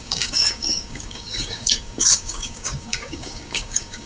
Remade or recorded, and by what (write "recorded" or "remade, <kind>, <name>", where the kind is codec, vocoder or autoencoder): remade, codec, DAC